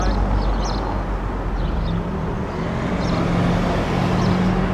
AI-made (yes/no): no